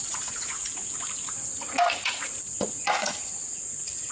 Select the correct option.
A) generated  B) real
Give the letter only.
A